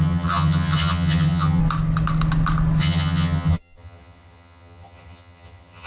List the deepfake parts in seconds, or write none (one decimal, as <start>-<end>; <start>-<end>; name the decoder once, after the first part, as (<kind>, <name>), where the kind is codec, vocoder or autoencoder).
0.0-1.6 (vocoder, HiFi-GAN); 2.8-5.9